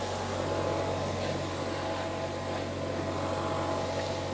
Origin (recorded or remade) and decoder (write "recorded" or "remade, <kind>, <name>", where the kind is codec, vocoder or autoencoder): recorded